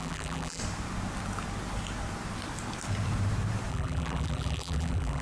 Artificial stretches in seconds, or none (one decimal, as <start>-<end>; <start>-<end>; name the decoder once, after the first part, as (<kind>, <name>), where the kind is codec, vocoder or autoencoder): 0.0-0.6 (vocoder, BigVGAN v2); 3.7-5.2